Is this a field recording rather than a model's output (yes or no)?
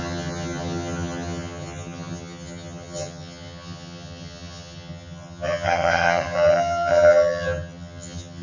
no